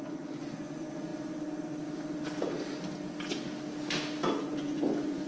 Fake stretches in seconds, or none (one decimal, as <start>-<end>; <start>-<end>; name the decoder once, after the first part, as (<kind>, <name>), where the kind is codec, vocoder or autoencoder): 0.0-1.1 (vocoder, Vocos); 4.3-5.3